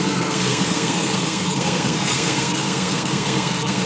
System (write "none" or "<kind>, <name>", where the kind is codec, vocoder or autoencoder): codec, SNAC